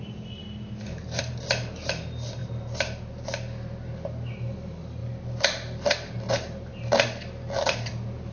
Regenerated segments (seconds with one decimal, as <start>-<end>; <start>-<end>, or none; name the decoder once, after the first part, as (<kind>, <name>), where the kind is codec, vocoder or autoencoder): 0.4-1.2 (vocoder, BigVGAN v2)